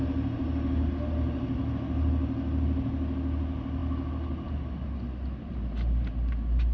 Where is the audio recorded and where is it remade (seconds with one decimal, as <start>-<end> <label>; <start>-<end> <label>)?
0.0-6.7 recorded